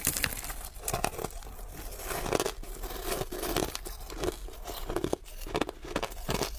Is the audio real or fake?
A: real